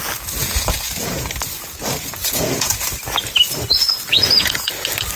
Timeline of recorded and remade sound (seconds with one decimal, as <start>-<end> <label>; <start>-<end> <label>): 0.0-0.4 recorded; 0.4-1.3 remade; 1.3-2.2 recorded; 2.2-2.8 remade; 2.8-4.1 recorded; 4.1-4.7 remade; 4.7-5.2 recorded